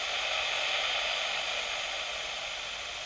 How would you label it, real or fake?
real